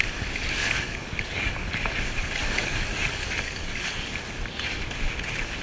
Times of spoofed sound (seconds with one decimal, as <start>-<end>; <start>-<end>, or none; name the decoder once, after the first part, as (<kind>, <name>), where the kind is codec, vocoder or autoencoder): 0.6-1.7 (codec, DAC); 2.4-3.9